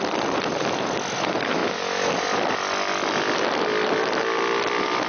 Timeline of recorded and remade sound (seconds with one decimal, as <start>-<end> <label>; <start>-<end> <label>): 0.0-5.1 recorded